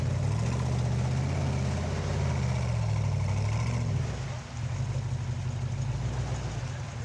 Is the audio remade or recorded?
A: recorded